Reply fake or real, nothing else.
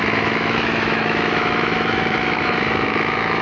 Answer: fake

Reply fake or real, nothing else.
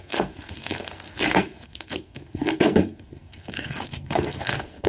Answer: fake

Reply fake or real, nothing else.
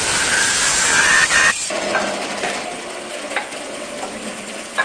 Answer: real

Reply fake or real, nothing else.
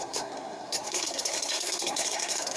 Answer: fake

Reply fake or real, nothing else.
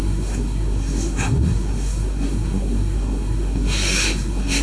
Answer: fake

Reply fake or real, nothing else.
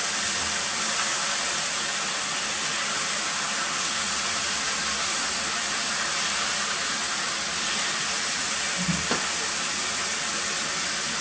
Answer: real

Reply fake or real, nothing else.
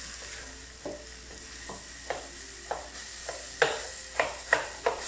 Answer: real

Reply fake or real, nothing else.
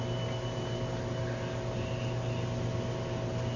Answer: real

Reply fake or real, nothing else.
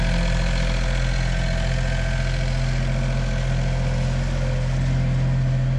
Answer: real